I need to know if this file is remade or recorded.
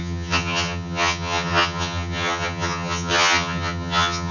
remade